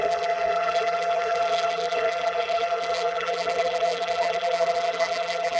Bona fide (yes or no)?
no